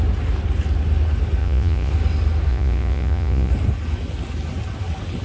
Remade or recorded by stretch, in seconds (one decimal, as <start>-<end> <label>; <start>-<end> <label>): 0.0-1.4 recorded; 1.4-1.9 remade; 1.9-2.5 recorded; 2.5-3.5 remade; 3.5-5.2 recorded